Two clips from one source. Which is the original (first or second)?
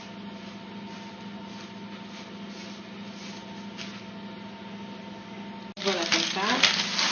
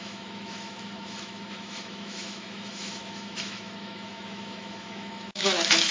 first